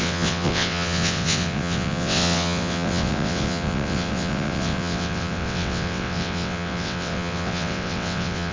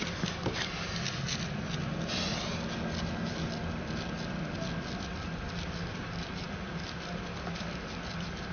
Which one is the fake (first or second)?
first